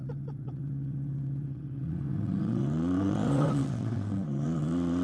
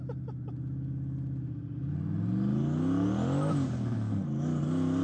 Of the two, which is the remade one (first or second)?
first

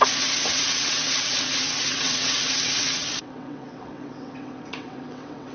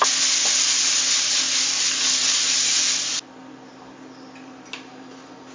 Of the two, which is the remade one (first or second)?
first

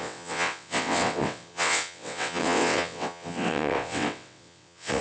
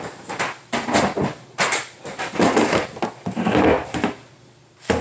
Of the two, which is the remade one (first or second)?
first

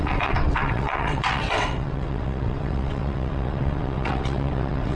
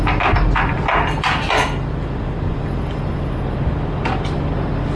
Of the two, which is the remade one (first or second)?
first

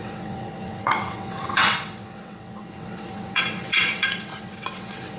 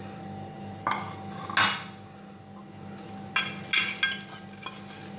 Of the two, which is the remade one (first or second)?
first